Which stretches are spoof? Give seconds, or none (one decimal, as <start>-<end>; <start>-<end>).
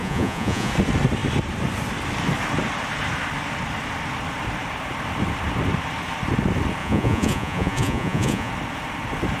0.0-0.7; 6.8-8.5